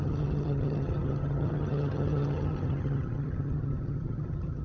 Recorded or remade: remade